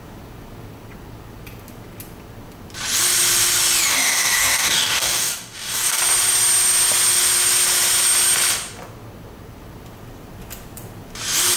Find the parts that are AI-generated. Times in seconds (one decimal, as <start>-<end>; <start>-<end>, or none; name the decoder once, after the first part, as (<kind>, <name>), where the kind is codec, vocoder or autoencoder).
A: 3.9-6.0 (codec, DAC)